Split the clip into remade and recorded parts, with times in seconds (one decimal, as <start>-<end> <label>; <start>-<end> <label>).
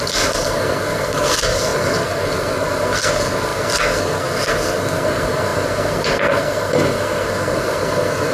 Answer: 0.0-8.3 remade